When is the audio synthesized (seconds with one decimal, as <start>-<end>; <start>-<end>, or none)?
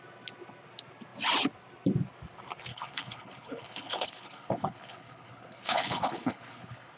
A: 2.7-7.0